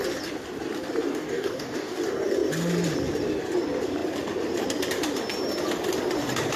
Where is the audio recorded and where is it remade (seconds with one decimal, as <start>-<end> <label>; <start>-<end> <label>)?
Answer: 0.0-1.1 recorded; 1.1-2.0 remade; 2.0-6.6 recorded